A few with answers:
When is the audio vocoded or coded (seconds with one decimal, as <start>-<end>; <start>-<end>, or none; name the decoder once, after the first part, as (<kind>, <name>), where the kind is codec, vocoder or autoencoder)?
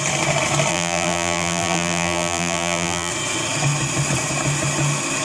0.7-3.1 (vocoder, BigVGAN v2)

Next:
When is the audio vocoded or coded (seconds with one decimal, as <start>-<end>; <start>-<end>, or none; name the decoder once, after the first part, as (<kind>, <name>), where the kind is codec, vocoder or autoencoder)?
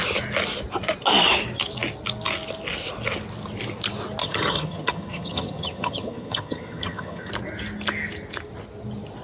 4.2-7.3 (vocoder, HiFi-GAN)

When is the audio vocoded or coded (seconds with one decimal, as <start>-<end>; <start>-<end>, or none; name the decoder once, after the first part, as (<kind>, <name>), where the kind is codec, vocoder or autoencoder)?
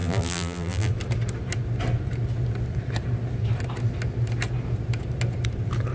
0.0-0.9 (vocoder, BigVGAN v2)